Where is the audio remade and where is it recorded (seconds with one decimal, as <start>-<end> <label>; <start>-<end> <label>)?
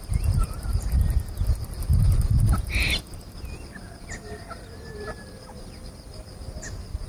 0.0-7.1 recorded